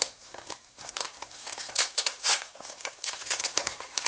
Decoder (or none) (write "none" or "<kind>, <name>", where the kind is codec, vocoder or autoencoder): codec, SNAC